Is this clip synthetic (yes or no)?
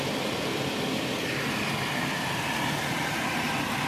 yes